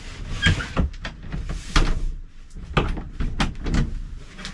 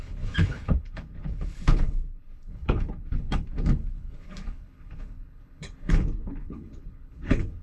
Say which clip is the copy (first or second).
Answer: second